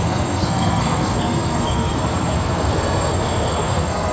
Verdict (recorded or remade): remade